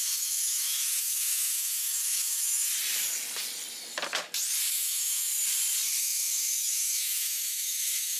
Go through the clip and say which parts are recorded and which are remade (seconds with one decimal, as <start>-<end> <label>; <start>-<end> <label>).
0.0-2.7 remade; 2.7-4.7 recorded; 4.7-5.3 remade; 5.3-6.0 recorded; 6.0-8.2 remade